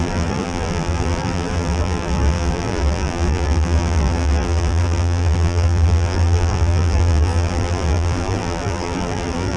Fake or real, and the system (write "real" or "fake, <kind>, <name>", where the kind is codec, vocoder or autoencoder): fake, vocoder, BigVGAN v2